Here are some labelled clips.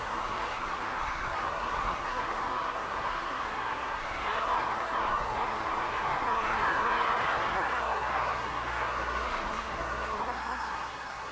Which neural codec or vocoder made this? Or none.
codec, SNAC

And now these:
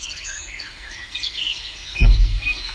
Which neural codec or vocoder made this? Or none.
codec, SNAC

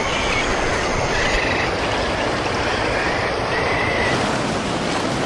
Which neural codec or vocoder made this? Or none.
none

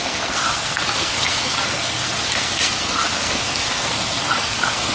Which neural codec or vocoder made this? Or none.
codec, SNAC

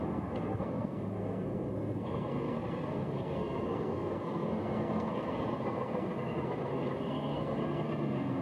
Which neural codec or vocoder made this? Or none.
codec, SNAC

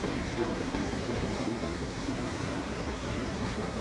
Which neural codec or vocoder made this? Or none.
codec, SNAC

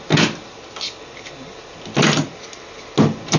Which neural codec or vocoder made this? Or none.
none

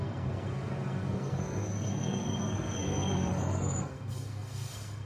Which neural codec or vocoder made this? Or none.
codec, SNAC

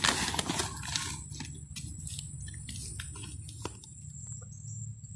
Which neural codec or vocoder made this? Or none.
none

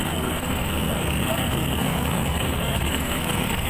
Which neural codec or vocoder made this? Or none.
codec, SNAC